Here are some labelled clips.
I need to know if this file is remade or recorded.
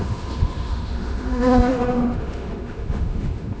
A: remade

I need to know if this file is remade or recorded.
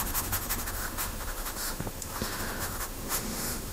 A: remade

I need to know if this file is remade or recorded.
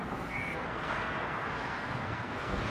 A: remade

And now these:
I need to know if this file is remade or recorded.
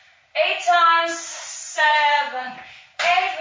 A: remade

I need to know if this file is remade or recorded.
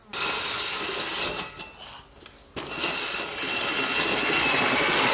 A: recorded